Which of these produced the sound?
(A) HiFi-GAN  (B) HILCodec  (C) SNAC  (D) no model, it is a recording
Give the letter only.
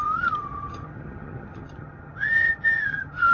A